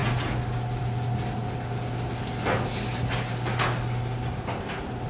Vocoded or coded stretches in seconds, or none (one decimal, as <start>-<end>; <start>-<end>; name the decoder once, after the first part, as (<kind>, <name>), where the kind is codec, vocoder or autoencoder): none